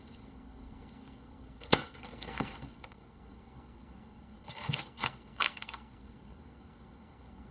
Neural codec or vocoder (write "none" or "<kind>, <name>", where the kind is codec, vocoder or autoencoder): codec, SNAC